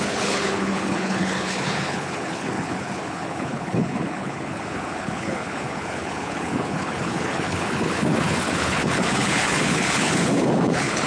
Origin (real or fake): fake